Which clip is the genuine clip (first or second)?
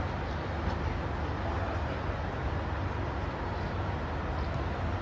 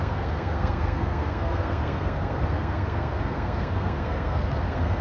first